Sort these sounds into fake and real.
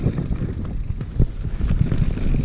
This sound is real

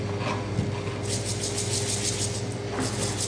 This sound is real